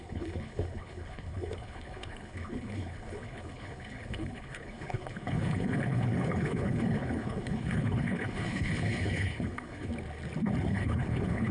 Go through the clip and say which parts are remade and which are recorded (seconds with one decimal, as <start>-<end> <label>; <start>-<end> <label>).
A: 0.0-9.9 remade; 9.9-10.6 recorded; 10.6-11.5 remade